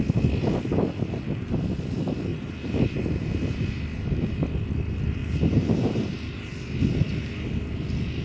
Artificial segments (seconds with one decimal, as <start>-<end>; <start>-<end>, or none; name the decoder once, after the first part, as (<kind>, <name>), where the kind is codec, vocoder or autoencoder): 2.3-3.8 (vocoder, BigVGAN v2); 5.2-6.5